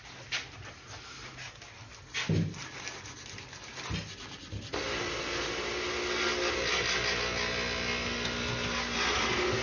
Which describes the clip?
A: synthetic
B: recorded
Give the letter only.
B